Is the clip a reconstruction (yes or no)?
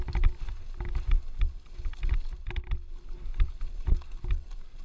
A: no